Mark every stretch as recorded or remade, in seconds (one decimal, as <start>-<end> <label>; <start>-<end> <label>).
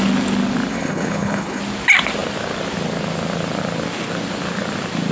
0.0-0.7 recorded; 0.7-1.6 remade; 1.6-5.1 recorded